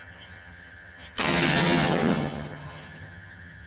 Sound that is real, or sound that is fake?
fake